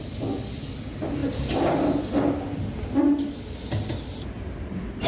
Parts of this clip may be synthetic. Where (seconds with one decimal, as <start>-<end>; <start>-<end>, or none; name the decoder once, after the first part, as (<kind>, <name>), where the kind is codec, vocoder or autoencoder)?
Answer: none